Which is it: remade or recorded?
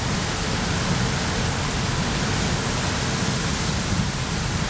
recorded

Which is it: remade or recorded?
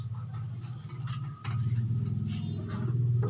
recorded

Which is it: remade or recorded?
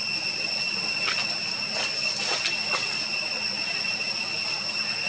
recorded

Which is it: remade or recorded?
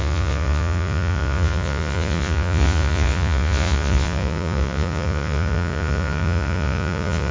remade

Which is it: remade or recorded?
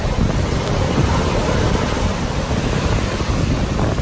recorded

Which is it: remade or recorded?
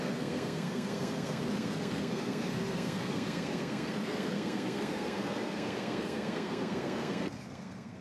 remade